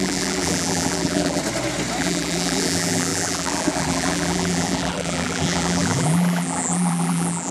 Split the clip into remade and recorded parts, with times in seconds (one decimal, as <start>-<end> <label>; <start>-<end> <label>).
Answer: 0.0-1.4 remade; 1.4-2.0 recorded; 2.0-7.5 remade